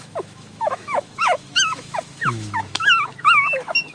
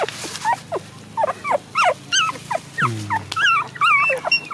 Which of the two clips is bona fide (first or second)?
second